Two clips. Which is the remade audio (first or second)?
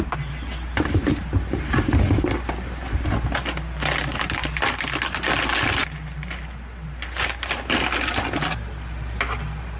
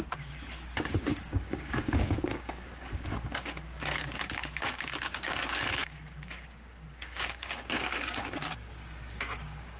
second